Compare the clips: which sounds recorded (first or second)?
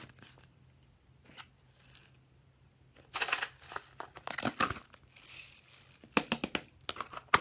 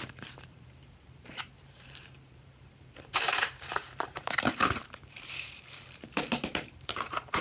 first